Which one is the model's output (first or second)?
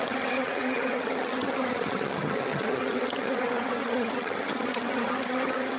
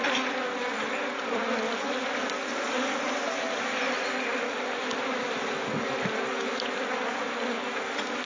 first